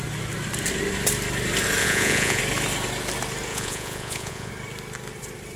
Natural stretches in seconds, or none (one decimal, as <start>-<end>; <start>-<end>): 0.0-1.8; 2.4-3.5; 4.5-5.6